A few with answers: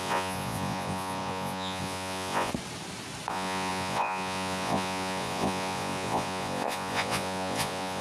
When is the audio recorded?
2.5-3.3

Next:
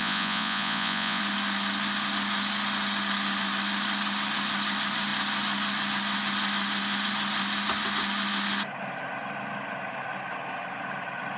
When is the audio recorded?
1.2-11.4

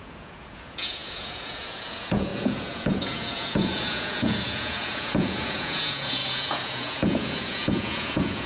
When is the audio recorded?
none

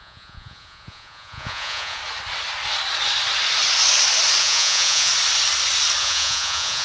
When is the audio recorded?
2.0-4.4; 5.1-6.0

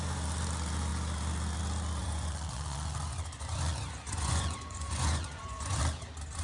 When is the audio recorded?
0.0-2.0; 5.8-6.4

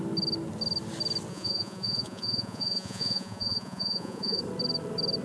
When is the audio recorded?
0.0-1.3; 4.4-5.2

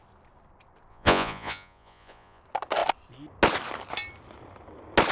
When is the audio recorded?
0.0-0.9; 2.4-5.1